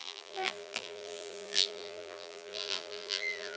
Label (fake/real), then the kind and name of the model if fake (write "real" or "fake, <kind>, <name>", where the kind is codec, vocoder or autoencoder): fake, vocoder, BigVGAN v2